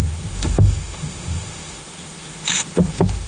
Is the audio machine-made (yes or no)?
yes